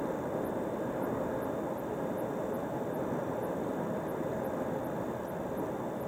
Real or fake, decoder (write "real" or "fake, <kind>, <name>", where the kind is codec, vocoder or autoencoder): real